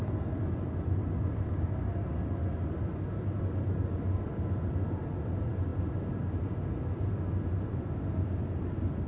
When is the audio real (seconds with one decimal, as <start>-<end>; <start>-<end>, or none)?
0.0-9.1